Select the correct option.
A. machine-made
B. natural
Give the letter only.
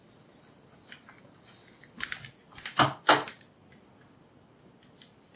B